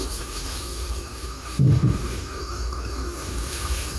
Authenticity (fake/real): fake